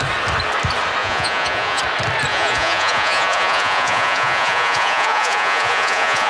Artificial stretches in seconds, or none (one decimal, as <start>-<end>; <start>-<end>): 1.0-1.8; 2.3-6.3